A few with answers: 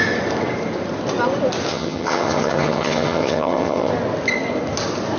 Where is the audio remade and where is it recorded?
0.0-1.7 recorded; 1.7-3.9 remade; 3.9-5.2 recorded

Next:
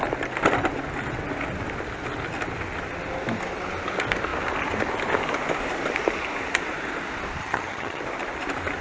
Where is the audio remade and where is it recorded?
0.0-7.4 recorded; 7.4-8.0 remade; 8.0-8.8 recorded

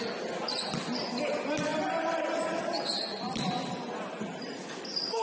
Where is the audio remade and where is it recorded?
0.0-5.2 recorded

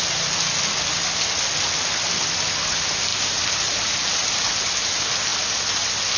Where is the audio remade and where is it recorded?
0.0-6.2 recorded